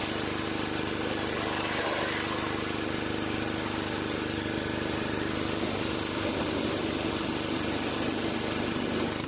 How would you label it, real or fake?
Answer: real